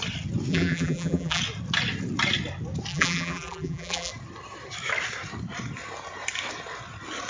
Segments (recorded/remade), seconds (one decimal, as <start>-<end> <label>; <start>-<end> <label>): 0.0-0.5 recorded; 0.5-1.4 remade; 1.4-2.9 recorded; 2.9-4.1 remade; 4.1-7.3 recorded